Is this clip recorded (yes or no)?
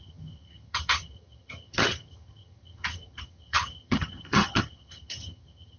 no